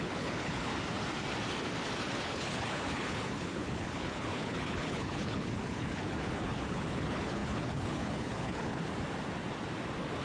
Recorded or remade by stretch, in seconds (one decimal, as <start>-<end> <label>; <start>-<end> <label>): 0.0-0.7 remade; 0.7-2.2 recorded; 2.2-8.9 remade; 8.9-10.2 recorded